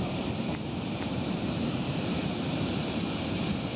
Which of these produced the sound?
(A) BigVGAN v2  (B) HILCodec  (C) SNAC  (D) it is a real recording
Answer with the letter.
A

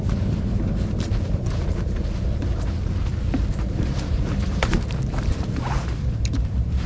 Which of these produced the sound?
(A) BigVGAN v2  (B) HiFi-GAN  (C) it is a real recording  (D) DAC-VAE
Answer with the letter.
A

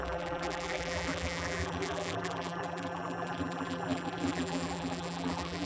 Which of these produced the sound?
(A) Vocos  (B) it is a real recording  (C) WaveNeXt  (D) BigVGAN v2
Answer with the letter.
D